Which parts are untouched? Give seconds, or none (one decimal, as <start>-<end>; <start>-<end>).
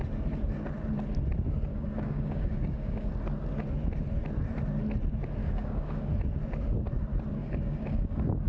0.0-1.7; 3.1-5.4; 6.1-7.4